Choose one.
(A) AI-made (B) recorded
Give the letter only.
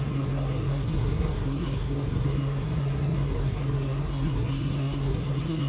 A